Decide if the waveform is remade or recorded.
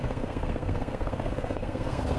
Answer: remade